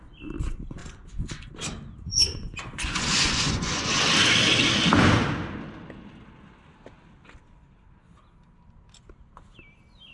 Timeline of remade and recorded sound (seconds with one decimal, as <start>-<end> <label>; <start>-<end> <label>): 0.0-0.8 recorded; 0.8-1.5 remade; 1.5-2.1 recorded; 2.1-4.0 remade; 4.0-10.1 recorded